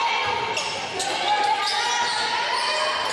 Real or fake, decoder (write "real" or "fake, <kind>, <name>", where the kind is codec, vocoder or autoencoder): real